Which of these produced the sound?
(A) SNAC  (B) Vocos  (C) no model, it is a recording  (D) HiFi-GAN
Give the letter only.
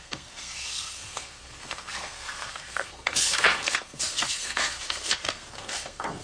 A